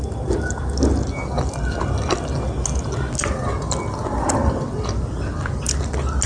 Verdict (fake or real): real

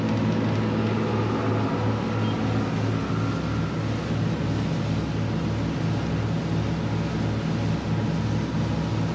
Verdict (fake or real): real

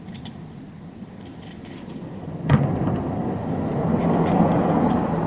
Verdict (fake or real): real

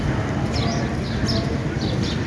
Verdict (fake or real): real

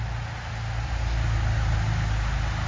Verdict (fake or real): real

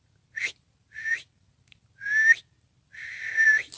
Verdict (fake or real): real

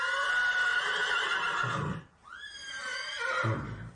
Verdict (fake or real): real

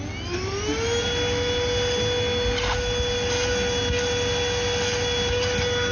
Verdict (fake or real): real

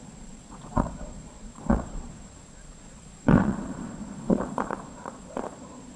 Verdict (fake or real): fake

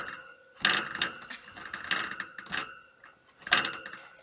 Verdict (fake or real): real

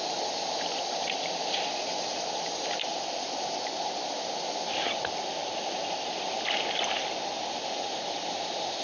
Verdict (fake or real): real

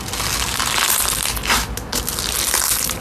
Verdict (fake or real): real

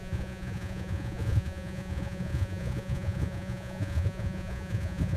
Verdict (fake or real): fake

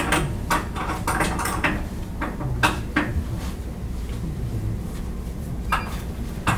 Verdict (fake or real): real